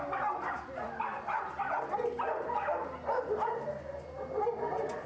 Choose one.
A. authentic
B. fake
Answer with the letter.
A